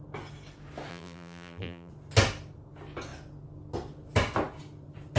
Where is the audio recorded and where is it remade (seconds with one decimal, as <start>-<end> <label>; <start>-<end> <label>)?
0.0-0.9 recorded; 0.9-1.9 remade; 1.9-5.2 recorded